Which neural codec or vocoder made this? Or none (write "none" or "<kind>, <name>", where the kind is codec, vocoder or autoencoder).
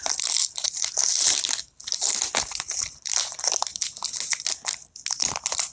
none